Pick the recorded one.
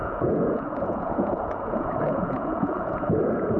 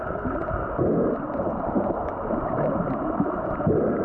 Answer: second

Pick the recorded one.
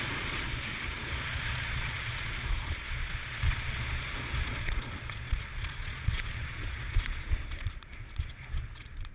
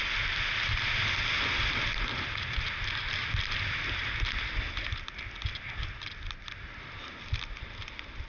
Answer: second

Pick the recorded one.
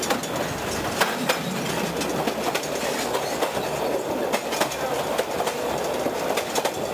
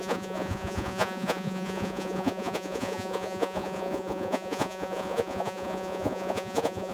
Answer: first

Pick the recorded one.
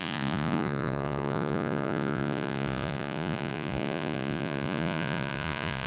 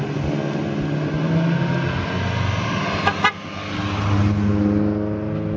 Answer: second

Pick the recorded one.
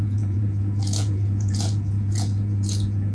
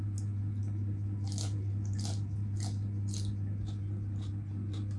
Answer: second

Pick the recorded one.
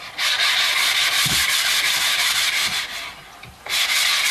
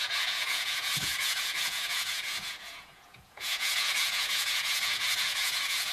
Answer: first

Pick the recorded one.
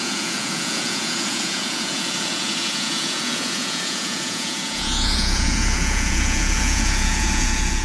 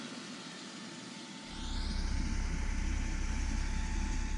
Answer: second